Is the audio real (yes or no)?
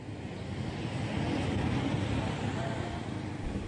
no